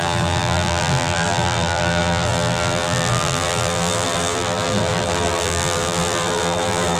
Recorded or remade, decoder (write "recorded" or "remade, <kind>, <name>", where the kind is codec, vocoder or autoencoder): remade, vocoder, BigVGAN v2